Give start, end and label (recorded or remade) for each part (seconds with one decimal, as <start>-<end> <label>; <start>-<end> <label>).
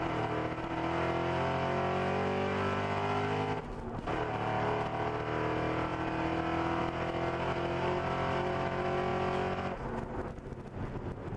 0.0-11.4 recorded